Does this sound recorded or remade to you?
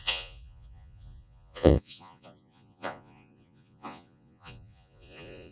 remade